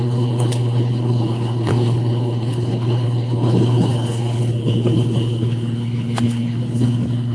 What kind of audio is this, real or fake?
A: fake